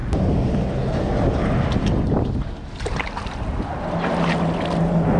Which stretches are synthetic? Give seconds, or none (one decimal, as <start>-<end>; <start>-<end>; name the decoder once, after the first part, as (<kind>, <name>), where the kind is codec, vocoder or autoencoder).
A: none